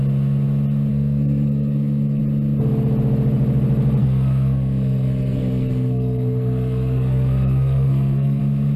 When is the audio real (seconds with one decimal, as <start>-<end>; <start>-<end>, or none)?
0.0-0.9; 2.2-4.0; 8.4-8.8